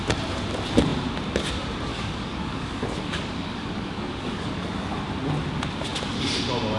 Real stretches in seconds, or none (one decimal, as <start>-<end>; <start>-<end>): 0.0-1.9; 5.0-6.8